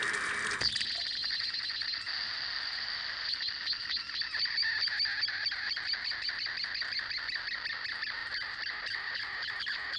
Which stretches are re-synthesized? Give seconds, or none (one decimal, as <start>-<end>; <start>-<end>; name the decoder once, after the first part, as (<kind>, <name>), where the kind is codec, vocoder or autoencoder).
none